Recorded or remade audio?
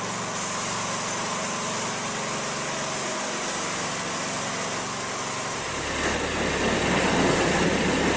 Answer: recorded